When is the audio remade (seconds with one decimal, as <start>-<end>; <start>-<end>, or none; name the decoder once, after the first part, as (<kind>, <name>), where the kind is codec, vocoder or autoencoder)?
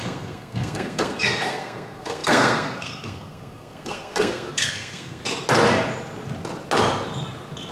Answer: 0.0-5.2 (codec, SNAC)